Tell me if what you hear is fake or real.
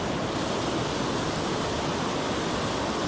real